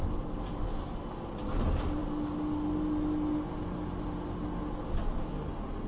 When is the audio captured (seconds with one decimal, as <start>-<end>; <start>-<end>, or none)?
0.0-5.9